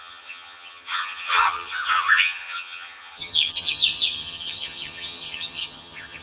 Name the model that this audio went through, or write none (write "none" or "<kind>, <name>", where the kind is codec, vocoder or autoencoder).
vocoder, HiFi-GAN